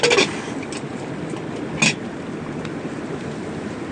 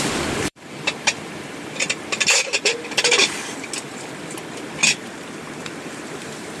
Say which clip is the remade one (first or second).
second